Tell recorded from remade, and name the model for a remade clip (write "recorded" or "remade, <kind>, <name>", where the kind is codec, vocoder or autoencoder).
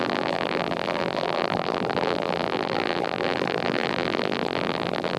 remade, vocoder, BigVGAN v2